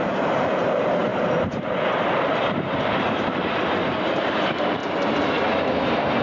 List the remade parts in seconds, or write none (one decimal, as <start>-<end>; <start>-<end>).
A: 0.0-4.8